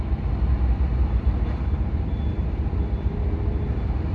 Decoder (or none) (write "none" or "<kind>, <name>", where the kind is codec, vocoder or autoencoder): vocoder, BigVGAN v2